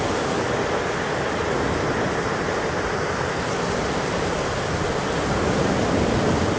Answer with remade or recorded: recorded